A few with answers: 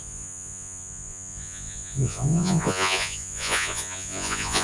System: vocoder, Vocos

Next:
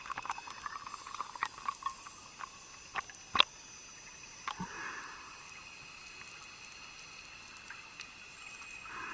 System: none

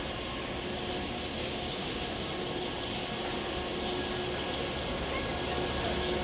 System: none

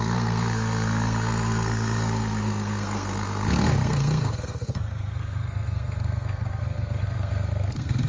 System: codec, SNAC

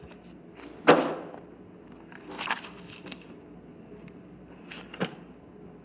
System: none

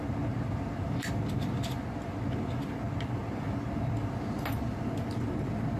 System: none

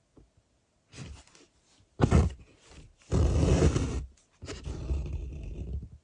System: none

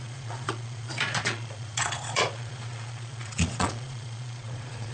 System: vocoder, Vocos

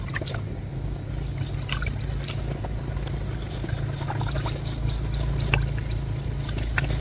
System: none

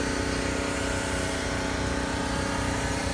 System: vocoder, BigVGAN v2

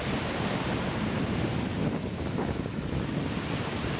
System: none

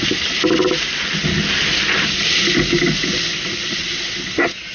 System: none